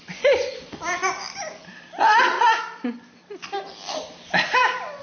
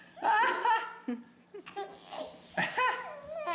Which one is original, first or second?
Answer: second